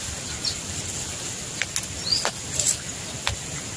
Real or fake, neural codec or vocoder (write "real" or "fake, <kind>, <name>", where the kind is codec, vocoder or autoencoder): real